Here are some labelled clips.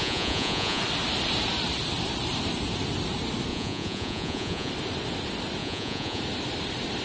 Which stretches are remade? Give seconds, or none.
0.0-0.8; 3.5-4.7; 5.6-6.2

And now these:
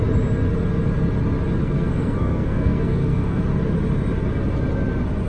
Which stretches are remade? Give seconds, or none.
1.6-3.4